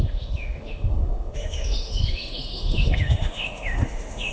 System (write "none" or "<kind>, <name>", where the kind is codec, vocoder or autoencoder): autoencoder, DAC-VAE